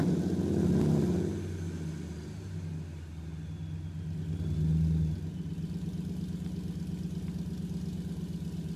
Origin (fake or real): real